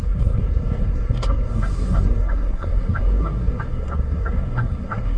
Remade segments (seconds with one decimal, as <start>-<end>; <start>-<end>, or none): 0.0-5.2